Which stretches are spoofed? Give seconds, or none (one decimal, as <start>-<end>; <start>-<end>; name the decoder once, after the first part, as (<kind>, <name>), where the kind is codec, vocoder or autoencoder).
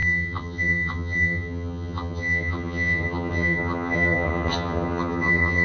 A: 0.0-5.6 (vocoder, HiFi-GAN)